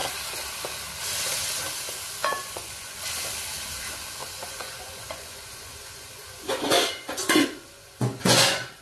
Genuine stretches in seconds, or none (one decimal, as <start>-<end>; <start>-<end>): 0.0-2.2; 3.0-4.2